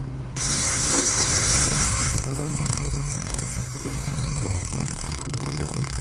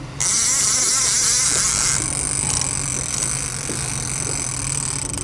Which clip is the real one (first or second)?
second